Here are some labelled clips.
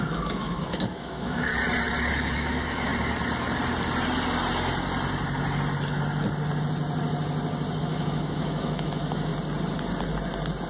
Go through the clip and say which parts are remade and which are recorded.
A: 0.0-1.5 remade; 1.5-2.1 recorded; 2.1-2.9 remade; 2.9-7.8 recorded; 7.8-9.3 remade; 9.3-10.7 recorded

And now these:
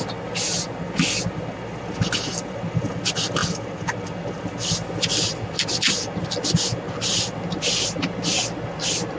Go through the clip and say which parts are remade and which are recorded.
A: 0.0-9.2 recorded

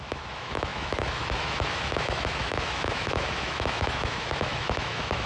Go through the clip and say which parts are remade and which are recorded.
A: 0.0-5.3 remade

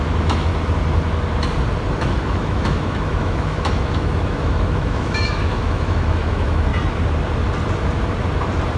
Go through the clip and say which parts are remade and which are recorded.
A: 0.0-0.5 remade; 0.5-2.2 recorded; 2.2-6.7 remade; 6.7-8.8 recorded

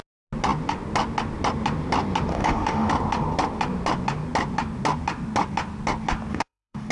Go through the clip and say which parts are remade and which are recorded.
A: 0.0-2.3 recorded; 2.3-2.9 remade; 2.9-6.3 recorded; 6.3-6.9 remade

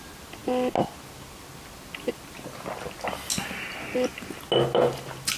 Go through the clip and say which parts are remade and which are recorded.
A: 0.0-5.4 recorded

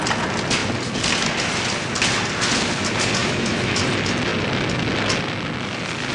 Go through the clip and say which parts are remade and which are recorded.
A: 0.0-3.2 recorded; 3.2-3.8 remade; 3.8-6.1 recorded